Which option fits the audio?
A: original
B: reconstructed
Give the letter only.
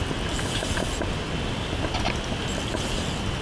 A